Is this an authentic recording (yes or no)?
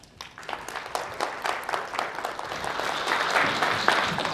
yes